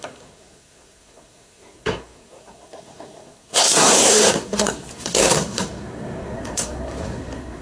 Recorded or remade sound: remade